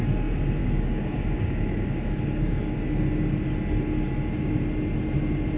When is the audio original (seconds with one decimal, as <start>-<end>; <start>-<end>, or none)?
0.0-0.6; 2.8-5.6